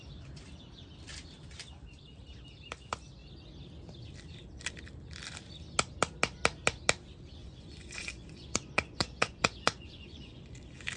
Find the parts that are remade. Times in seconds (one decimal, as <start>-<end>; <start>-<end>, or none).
7.4-10.6